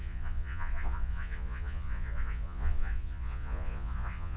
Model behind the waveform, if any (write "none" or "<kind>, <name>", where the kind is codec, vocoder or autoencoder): vocoder, Vocos